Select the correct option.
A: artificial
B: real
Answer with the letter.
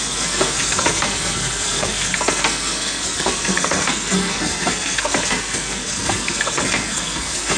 A